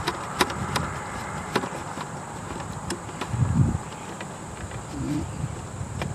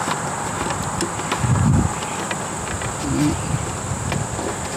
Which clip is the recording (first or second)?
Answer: second